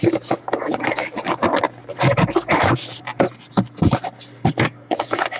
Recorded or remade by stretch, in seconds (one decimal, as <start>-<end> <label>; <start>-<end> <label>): 0.0-1.4 remade; 1.4-4.5 recorded; 4.5-5.4 remade